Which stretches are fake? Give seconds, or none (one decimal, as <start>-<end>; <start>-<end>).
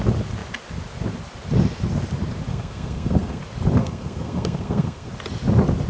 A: 2.5-3.4; 3.8-5.1